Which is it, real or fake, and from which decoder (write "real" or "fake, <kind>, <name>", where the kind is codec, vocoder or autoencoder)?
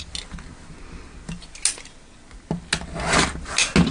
real